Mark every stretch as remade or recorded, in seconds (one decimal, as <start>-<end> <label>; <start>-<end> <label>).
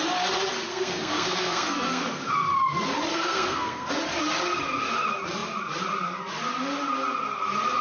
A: 0.0-0.7 recorded; 0.7-2.3 remade; 2.3-3.1 recorded; 3.1-3.9 remade; 3.9-7.8 recorded